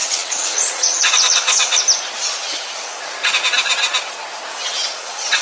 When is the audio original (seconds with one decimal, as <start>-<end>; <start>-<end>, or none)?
1.8-2.2; 3.0-4.5